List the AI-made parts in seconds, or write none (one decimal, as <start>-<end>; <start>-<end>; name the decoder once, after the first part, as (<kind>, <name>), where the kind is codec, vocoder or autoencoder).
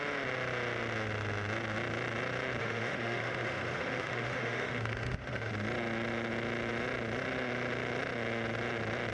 2.6-5.5 (autoencoder, DAC-VAE)